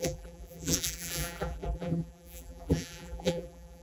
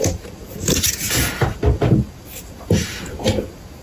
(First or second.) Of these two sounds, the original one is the second